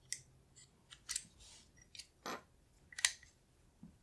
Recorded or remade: recorded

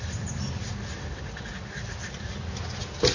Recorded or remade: recorded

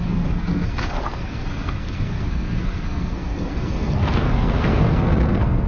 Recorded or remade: remade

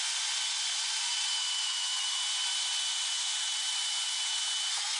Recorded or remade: remade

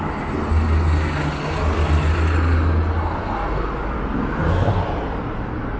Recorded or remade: recorded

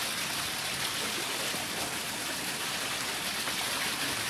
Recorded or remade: recorded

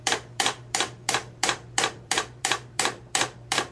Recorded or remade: remade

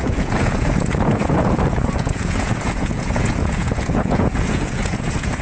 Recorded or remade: remade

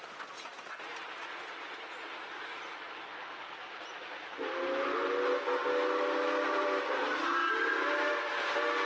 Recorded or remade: recorded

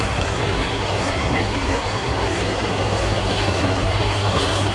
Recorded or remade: remade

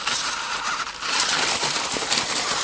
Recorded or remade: recorded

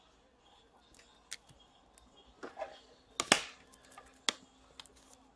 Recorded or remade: recorded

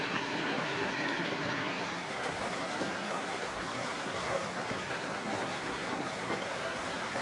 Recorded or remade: remade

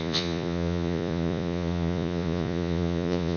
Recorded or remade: remade